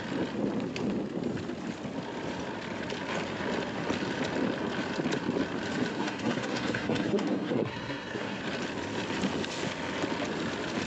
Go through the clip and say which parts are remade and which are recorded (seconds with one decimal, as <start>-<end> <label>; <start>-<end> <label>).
0.0-5.9 recorded; 5.9-8.4 remade; 8.4-10.9 recorded